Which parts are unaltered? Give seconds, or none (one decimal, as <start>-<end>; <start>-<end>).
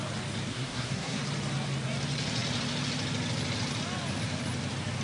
0.0-0.5; 1.2-5.0